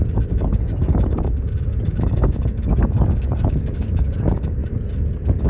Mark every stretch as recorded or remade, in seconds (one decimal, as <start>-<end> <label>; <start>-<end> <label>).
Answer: 0.0-4.6 remade; 4.6-5.5 recorded

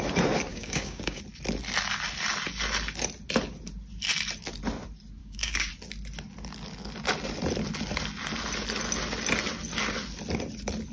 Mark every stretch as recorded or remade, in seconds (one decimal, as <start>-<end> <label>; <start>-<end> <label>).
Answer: 0.0-0.5 recorded; 0.5-1.2 remade; 1.2-5.2 recorded; 5.2-5.7 remade; 5.7-10.9 recorded

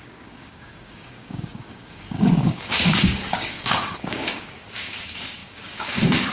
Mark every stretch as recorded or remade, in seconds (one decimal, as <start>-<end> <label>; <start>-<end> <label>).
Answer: 0.0-6.3 remade

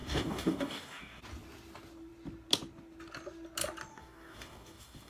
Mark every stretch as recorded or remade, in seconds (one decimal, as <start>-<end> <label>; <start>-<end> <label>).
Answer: 0.0-1.2 remade; 1.2-3.9 recorded; 3.9-5.1 remade

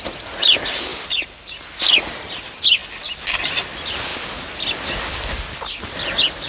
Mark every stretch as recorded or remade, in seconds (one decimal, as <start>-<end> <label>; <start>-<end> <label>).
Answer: 0.0-6.5 recorded

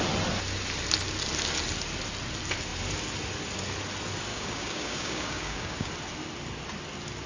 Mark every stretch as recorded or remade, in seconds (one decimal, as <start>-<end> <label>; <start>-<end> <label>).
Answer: 0.0-4.3 recorded; 4.3-5.9 remade; 5.9-7.3 recorded